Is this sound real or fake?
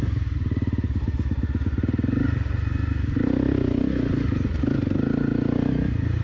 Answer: real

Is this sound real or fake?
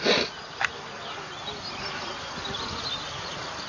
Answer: real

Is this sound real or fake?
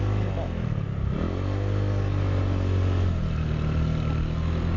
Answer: real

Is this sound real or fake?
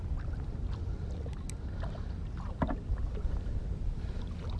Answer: real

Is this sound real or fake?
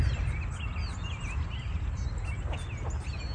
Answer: real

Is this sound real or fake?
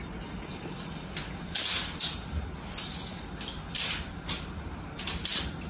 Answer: real